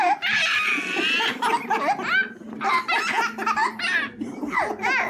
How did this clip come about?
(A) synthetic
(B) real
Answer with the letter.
B